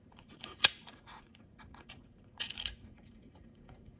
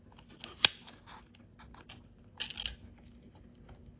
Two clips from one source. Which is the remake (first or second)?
first